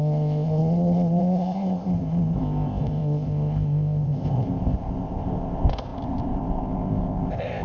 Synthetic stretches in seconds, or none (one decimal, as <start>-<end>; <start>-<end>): 0.0-7.6